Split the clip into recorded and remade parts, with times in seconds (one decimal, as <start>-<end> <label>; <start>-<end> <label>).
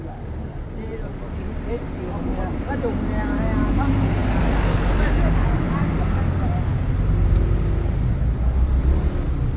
0.0-9.6 recorded